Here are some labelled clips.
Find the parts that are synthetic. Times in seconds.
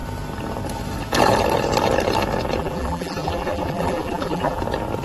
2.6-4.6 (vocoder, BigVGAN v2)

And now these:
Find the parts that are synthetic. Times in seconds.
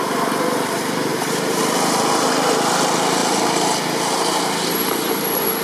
1.1-1.6 (vocoder, BigVGAN v2)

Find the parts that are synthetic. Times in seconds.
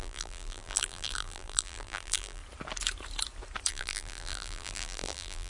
0.0-2.4 (vocoder, BigVGAN v2); 3.7-5.5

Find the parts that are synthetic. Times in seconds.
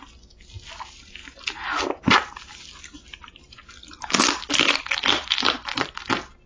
1.2-3.7 (vocoder, BigVGAN v2); 5.0-6.1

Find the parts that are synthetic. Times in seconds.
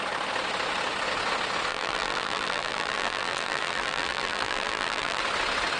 1.7-5.2 (vocoder, BigVGAN v2)